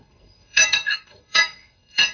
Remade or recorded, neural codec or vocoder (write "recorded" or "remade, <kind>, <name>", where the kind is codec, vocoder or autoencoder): remade, codec, SNAC